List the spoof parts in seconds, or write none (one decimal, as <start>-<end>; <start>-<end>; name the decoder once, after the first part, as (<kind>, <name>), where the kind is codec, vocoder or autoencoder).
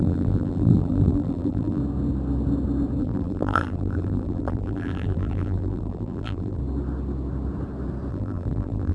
0.0-1.8 (vocoder, BigVGAN v2); 3.0-6.6; 8.1-8.9